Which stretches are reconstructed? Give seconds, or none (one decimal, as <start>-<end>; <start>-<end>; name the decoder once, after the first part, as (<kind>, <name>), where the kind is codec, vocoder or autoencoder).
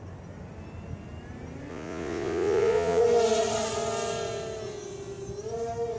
1.7-3.0 (vocoder, Vocos)